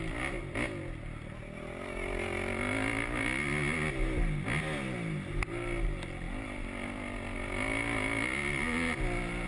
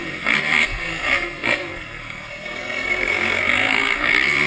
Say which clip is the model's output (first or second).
second